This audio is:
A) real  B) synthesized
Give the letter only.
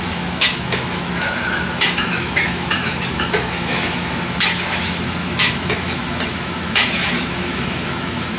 B